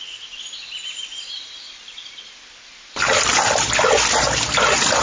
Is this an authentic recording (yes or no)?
yes